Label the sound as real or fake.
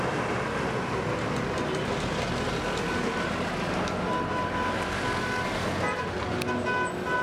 real